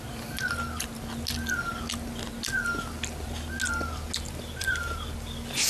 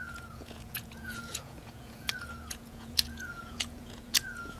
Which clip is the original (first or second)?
first